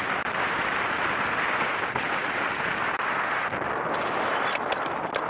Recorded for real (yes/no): yes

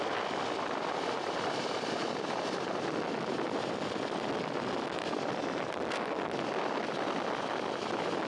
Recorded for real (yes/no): yes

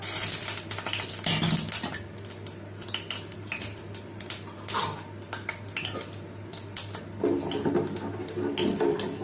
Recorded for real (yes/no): yes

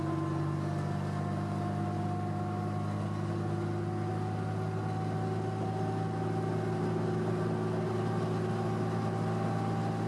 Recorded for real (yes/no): yes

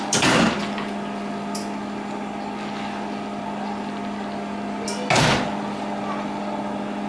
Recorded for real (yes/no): yes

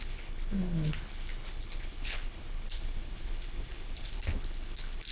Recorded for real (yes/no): no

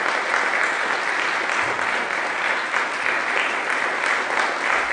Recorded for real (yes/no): yes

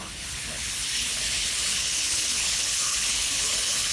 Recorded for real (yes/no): no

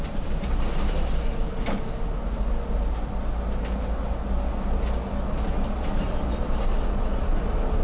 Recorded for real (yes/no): yes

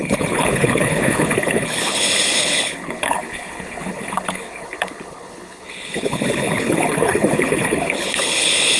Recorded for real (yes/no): no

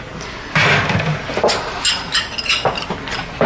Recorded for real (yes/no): yes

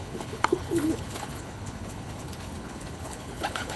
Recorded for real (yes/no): no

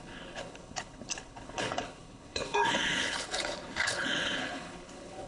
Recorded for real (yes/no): no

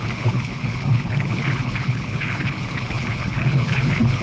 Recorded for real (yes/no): no